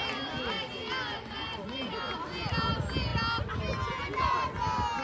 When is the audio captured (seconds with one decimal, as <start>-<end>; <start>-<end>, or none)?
0.0-5.0

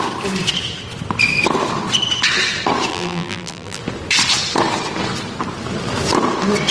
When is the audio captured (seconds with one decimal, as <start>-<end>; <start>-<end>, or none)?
0.0-2.9; 3.8-6.7

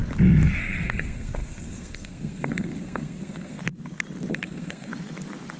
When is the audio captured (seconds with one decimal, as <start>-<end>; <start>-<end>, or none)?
0.0-0.6; 3.6-4.3; 4.9-5.6

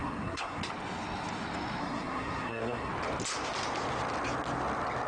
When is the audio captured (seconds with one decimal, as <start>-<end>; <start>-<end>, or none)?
0.6-1.8; 2.9-5.1

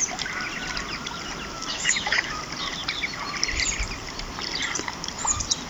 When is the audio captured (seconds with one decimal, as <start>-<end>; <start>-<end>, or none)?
0.0-1.7; 2.4-5.7